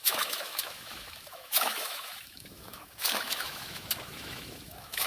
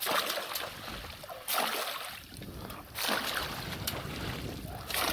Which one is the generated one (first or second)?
first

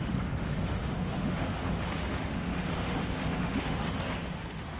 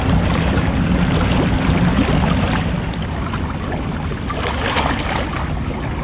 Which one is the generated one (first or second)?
first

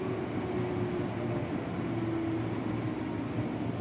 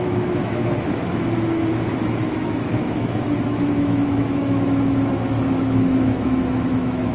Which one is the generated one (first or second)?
second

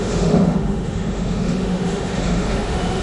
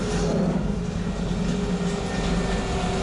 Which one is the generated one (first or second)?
first